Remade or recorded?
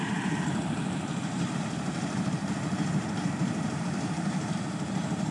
remade